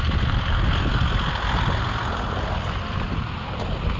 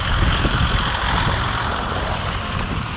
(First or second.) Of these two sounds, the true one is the first